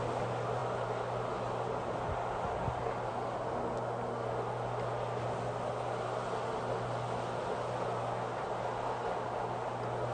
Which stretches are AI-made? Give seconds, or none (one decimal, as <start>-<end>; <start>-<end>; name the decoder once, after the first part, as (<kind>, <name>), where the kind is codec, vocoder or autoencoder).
none